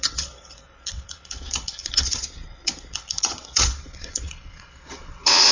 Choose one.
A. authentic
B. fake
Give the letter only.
B